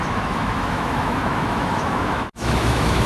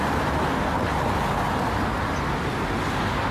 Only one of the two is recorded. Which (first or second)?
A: second